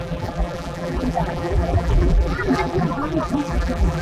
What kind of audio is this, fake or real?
fake